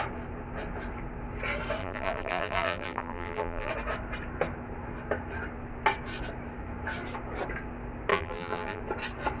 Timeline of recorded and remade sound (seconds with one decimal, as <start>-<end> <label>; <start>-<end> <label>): 0.0-1.8 recorded; 1.8-3.7 remade; 3.7-8.1 recorded; 8.1-8.8 remade; 8.8-9.4 recorded